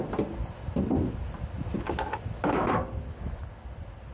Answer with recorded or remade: recorded